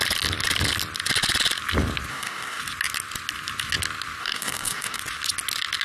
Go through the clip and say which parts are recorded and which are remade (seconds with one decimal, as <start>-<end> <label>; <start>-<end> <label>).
0.0-2.1 recorded; 2.1-2.6 remade; 2.6-4.2 recorded; 4.2-5.0 remade; 5.0-5.8 recorded